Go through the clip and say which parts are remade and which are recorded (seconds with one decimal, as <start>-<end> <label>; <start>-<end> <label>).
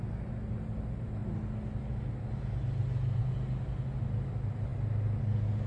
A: 0.0-5.7 recorded